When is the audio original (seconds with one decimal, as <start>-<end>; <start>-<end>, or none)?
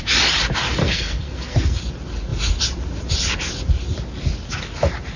0.0-0.8; 1.8-5.2